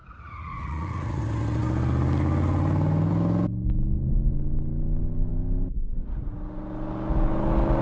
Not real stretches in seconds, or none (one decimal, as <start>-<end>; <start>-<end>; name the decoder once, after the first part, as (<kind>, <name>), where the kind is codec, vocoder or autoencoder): 0.0-1.2 (vocoder, Vocos)